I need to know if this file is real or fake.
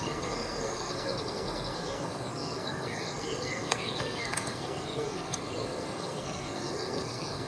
fake